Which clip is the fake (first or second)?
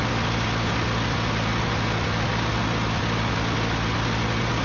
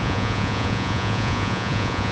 second